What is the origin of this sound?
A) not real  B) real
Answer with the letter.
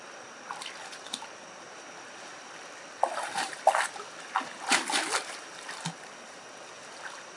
B